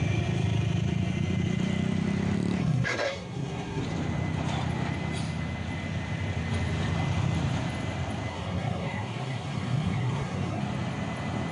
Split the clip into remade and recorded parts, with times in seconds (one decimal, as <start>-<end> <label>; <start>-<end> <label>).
0.0-2.6 recorded; 2.6-3.8 remade; 3.8-8.3 recorded; 8.3-10.6 remade; 10.6-11.5 recorded